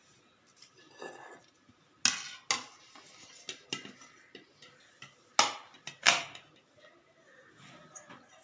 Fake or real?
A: real